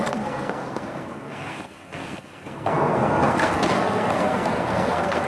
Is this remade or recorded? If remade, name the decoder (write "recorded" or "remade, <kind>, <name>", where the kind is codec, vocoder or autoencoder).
remade, codec, SNAC